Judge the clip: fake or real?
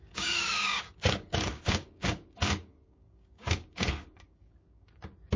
fake